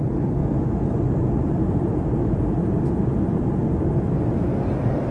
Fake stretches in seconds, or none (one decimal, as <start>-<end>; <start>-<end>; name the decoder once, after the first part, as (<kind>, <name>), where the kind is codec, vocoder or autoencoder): 0.0-0.4 (vocoder, BigVGAN v2); 1.1-3.6